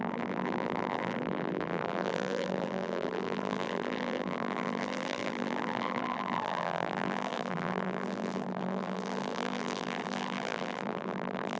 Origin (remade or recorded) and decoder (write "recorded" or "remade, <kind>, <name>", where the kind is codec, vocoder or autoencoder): remade, vocoder, BigVGAN v2